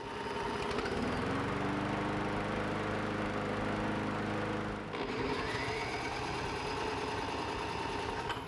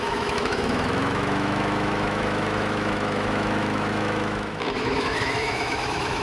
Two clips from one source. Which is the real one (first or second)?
first